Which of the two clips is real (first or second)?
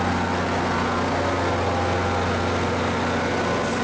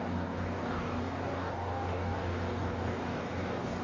first